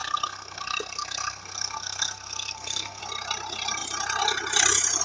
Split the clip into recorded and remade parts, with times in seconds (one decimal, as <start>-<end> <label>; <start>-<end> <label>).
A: 0.0-3.0 remade; 3.0-5.0 recorded